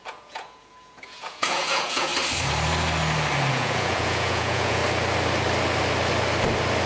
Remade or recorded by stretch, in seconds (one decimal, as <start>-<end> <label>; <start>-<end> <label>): 0.0-2.1 remade; 2.1-3.5 recorded; 3.5-4.8 remade; 4.8-6.9 recorded